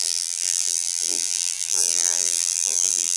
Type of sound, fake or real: fake